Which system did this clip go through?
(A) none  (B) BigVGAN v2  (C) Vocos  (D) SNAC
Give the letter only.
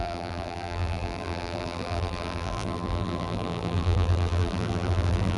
B